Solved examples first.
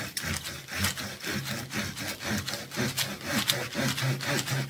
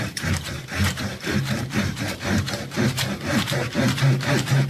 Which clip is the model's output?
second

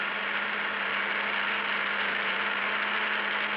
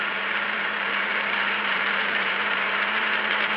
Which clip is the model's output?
second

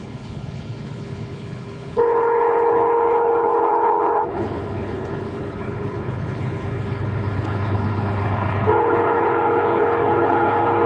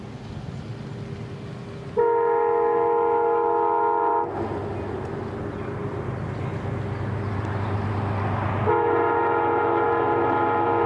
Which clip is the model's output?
first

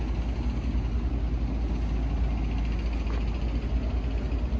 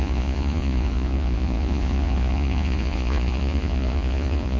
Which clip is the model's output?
second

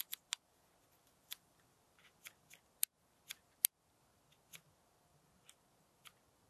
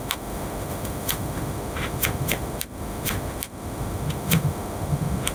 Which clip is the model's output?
second